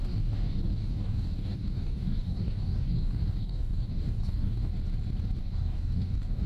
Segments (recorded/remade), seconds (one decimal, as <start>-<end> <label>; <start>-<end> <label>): 0.0-4.7 remade; 4.7-5.4 recorded; 5.4-6.5 remade